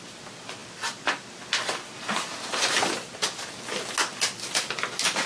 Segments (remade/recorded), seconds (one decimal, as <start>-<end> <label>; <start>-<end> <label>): 0.0-0.6 recorded; 0.6-2.8 remade; 2.8-5.3 recorded